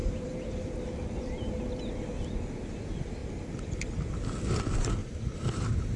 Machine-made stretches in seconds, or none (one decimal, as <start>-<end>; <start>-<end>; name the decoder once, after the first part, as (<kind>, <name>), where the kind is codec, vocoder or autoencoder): 0.0-1.6 (vocoder, BigVGAN v2); 5.0-6.0